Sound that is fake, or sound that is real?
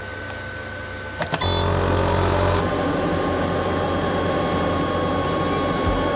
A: real